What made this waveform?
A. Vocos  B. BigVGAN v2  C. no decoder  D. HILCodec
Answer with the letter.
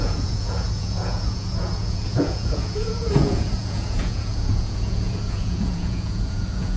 A